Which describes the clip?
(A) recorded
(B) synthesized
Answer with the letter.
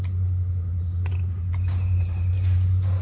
A